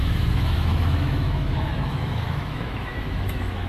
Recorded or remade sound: remade